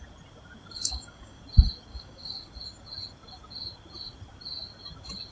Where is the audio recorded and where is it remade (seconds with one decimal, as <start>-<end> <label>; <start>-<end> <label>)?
0.0-0.8 recorded; 0.8-1.4 remade; 1.4-1.9 recorded; 1.9-2.5 remade; 2.5-5.3 recorded